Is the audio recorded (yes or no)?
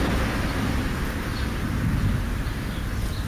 yes